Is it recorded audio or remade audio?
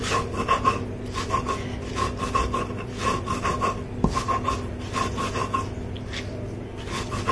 recorded